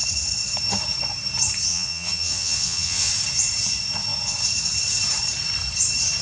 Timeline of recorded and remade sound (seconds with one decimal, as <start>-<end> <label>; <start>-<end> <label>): 0.0-1.7 recorded; 1.7-3.1 remade; 3.1-6.2 recorded